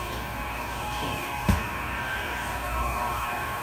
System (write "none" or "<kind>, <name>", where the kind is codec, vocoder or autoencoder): codec, DAC